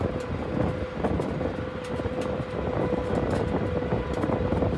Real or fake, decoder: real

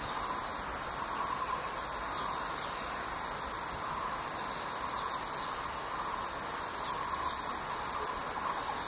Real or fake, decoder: real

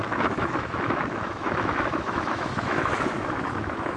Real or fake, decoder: fake, autoencoder, DAC-VAE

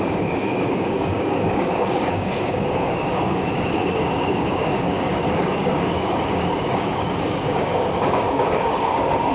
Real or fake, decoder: fake, codec, DAC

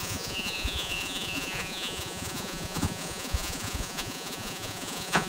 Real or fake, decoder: fake, vocoder, Vocos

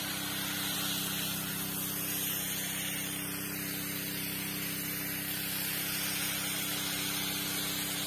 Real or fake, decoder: real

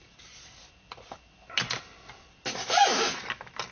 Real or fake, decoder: real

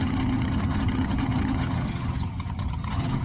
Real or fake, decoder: fake, vocoder, HiFi-GAN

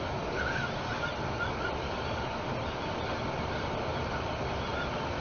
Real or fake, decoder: real